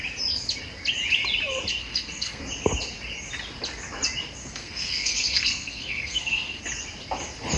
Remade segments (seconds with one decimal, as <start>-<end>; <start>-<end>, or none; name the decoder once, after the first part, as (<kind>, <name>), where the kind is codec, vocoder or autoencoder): 1.8-2.4 (codec, SNAC); 4.4-6.6